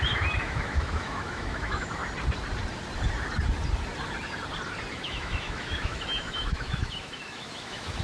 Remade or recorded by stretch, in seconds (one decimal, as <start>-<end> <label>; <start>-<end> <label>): 0.0-2.0 remade; 2.0-4.9 recorded; 4.9-8.0 remade